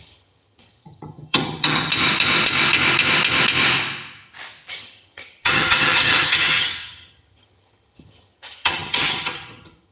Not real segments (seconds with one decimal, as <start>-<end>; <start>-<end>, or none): 0.0-1.9; 4.7-9.9

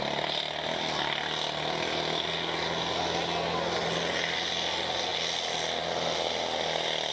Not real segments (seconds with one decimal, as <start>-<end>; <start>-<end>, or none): none

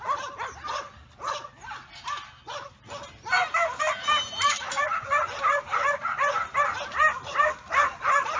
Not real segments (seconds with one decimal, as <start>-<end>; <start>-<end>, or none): none

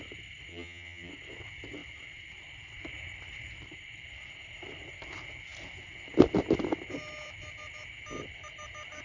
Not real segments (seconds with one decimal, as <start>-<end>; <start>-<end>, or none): 0.5-1.1

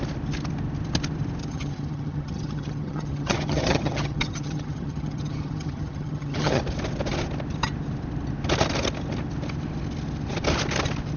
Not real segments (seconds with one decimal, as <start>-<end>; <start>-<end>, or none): 1.4-6.6

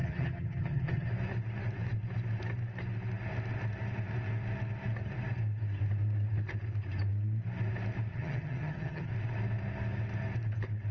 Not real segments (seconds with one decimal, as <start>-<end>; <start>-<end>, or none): 0.0-1.1; 8.1-9.1

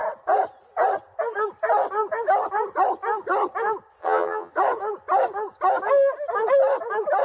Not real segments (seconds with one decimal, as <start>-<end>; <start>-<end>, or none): 4.0-4.5